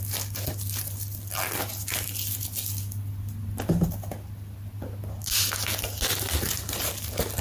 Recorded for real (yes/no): yes